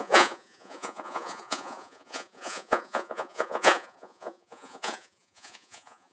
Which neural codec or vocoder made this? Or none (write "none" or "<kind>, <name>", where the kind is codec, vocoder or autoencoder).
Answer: vocoder, Vocos